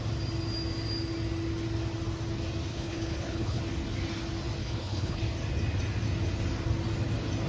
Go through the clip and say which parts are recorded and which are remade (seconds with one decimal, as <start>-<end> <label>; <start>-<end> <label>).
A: 0.0-2.7 recorded; 2.7-3.6 remade; 3.6-4.6 recorded; 4.6-5.2 remade; 5.2-7.5 recorded